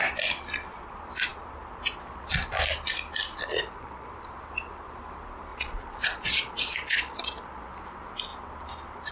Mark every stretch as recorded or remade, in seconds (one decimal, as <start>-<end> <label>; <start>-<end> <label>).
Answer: 0.0-3.5 recorded; 3.5-4.1 remade; 4.1-5.5 recorded; 5.5-7.7 remade; 7.7-9.1 recorded